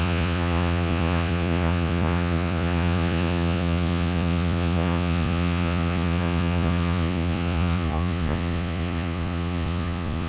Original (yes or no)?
no